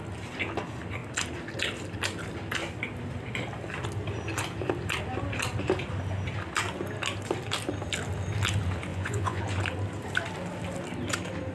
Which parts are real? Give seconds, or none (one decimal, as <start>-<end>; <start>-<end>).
0.0-8.9; 9.4-11.5